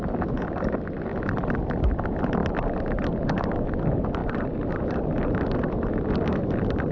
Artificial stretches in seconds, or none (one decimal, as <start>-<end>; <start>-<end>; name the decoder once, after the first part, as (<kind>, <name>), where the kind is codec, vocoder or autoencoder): 2.4-3.1 (vocoder, BigVGAN v2); 4.2-5.9